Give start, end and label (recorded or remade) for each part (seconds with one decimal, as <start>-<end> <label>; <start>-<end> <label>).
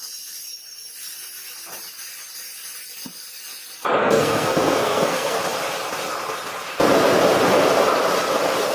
0.0-4.0 recorded; 4.0-5.4 remade; 5.4-8.7 recorded